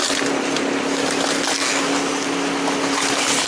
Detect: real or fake real